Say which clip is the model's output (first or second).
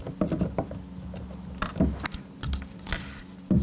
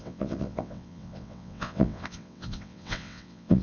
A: second